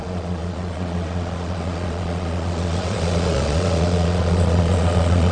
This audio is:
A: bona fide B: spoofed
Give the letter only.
B